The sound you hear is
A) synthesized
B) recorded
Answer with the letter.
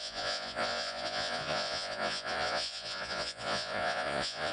A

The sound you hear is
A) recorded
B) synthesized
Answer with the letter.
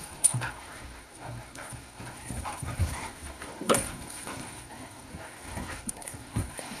B